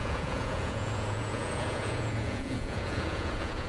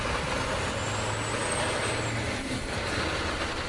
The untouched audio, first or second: second